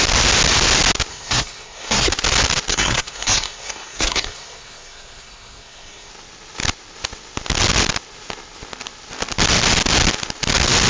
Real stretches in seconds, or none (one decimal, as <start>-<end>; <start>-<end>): 0.0-1.1; 2.1-2.7; 6.1-10.9